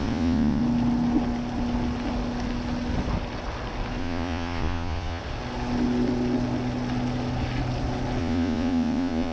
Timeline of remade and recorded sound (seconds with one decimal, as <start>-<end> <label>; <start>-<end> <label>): 0.0-0.6 remade; 0.6-4.0 recorded; 4.0-5.2 remade; 5.2-8.2 recorded; 8.2-9.3 remade